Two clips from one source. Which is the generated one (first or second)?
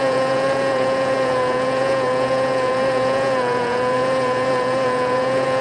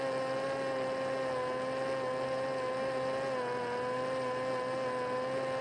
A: first